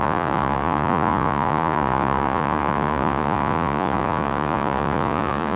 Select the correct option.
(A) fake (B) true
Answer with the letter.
A